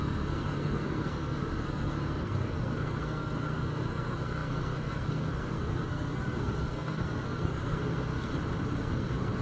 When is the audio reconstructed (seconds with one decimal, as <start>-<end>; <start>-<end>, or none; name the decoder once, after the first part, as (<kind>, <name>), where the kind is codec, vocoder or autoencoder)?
0.0-8.3 (codec, SNAC); 8.8-9.4